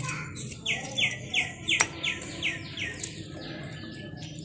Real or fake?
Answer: real